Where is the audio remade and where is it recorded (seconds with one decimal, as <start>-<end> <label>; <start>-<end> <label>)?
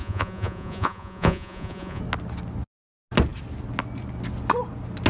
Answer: 0.0-2.0 remade; 2.0-5.1 recorded